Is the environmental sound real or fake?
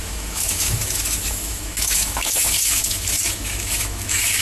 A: fake